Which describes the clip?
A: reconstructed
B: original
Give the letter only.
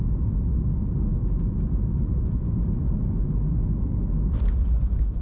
B